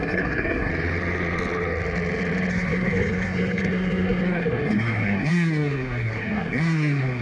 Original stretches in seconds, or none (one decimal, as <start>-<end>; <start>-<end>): 0.7-2.5